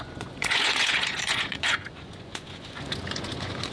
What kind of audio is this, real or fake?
fake